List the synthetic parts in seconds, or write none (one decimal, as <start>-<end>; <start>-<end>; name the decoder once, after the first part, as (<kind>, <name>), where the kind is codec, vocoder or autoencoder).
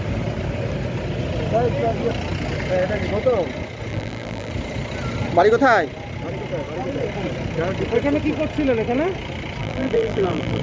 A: 3.9-4.5 (vocoder, BigVGAN v2); 9.6-10.6